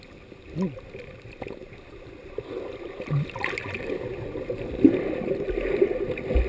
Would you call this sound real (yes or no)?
yes